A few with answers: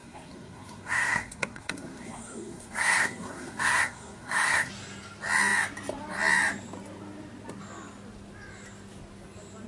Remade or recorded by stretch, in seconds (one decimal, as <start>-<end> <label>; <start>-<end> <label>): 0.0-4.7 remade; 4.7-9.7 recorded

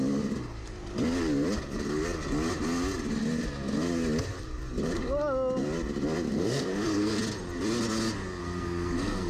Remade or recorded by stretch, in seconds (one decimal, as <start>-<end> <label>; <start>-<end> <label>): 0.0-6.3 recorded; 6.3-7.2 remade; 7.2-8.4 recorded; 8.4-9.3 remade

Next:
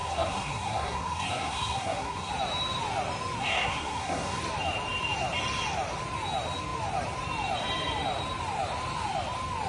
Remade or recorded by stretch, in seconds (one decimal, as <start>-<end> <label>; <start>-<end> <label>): 0.0-2.3 remade; 2.3-3.4 recorded; 3.4-4.4 remade; 4.4-9.7 recorded

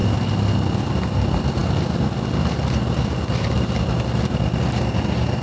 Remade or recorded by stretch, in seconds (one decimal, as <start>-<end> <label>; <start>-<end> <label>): 0.0-5.4 recorded